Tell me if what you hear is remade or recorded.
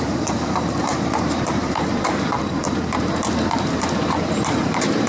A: remade